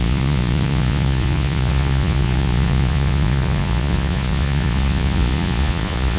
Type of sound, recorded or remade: remade